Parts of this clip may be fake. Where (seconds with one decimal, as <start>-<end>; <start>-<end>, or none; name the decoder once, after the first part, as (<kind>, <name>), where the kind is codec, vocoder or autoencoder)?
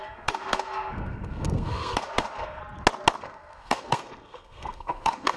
0.0-2.6 (codec, SNAC); 3.2-5.4